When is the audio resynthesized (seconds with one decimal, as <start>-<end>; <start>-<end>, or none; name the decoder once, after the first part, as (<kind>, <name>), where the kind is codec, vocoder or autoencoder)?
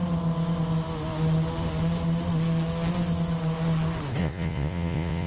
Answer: 4.2-5.3 (vocoder, Vocos)